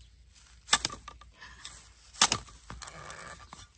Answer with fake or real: real